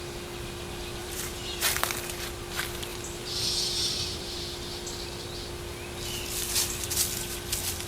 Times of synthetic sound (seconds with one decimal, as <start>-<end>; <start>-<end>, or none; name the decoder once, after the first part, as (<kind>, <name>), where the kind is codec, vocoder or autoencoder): 1.0-1.9 (vocoder, BigVGAN v2); 2.9-4.4